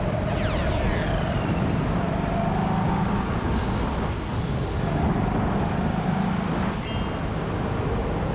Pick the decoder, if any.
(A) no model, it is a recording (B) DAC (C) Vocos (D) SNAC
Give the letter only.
A